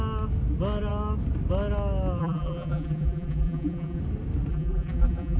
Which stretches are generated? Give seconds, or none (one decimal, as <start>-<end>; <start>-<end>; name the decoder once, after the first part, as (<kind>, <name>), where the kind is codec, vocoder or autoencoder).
2.2-4.0 (vocoder, BigVGAN v2); 4.5-5.4